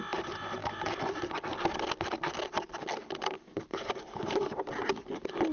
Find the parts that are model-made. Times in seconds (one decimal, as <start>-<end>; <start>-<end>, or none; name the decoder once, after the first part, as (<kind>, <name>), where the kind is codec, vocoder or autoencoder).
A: 3.7-4.7 (vocoder, BigVGAN v2)